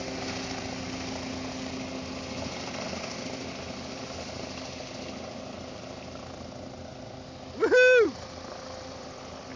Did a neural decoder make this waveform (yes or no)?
no